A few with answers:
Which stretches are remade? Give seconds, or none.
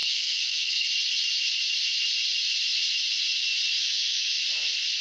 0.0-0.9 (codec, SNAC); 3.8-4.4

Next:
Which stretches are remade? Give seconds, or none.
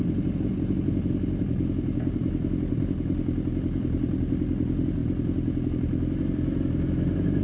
none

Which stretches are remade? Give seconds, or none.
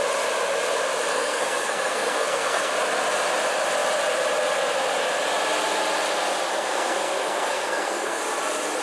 1.1-2.7 (codec, SNAC); 6.5-8.2